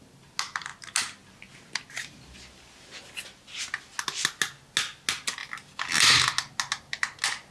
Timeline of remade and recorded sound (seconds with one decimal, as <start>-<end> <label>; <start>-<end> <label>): 0.0-7.5 recorded